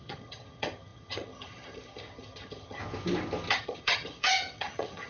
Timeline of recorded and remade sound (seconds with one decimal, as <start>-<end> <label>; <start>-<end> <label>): 0.0-2.8 remade; 2.8-3.5 recorded; 3.5-5.1 remade